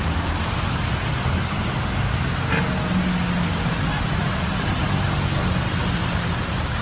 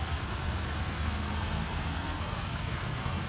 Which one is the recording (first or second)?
first